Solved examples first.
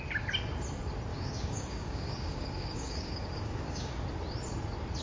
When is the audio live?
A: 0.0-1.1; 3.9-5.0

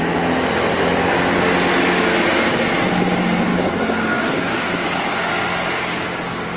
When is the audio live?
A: 0.0-3.5; 5.3-6.6

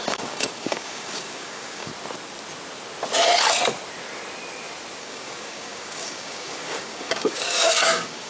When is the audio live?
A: 1.9-5.0